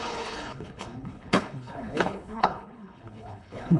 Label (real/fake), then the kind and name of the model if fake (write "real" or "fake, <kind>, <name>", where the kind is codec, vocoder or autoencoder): fake, codec, HILCodec